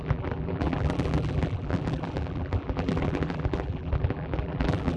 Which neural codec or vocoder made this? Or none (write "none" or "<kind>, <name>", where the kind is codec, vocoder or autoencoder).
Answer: vocoder, BigVGAN v2